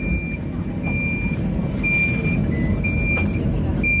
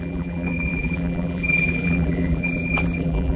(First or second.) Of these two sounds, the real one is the first